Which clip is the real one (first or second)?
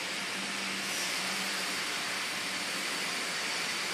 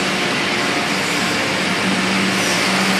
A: second